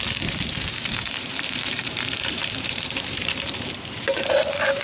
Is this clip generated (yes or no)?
yes